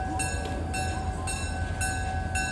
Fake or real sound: real